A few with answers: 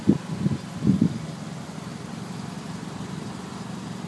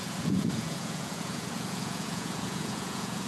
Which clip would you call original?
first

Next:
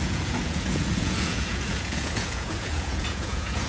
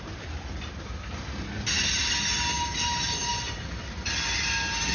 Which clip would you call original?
second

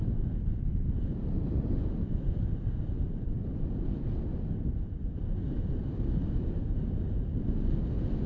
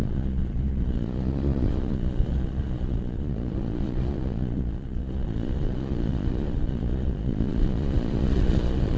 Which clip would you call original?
first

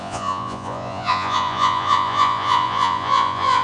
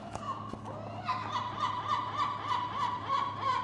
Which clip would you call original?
second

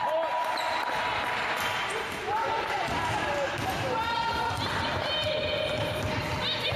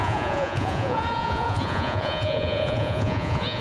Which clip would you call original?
first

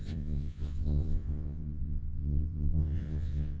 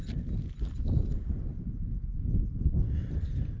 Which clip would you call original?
second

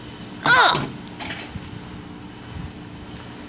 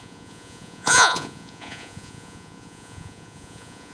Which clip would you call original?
first